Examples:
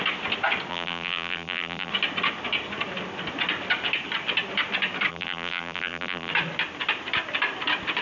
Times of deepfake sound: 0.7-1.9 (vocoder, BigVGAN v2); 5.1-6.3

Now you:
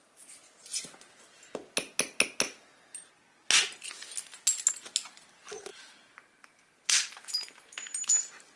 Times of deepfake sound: 5.7-7.6 (vocoder, BigVGAN v2)